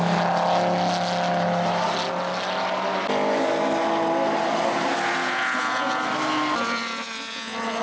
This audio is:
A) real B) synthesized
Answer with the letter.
A